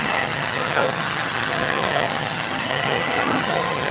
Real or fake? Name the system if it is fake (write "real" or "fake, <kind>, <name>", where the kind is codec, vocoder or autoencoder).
fake, vocoder, HiFi-GAN